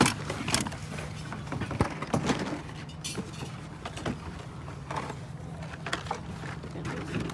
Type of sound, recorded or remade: recorded